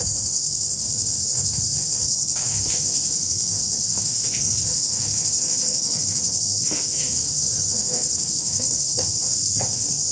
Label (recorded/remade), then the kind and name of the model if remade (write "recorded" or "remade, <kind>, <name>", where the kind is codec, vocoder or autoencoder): remade, codec, SNAC